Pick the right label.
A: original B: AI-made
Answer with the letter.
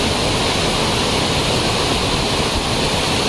A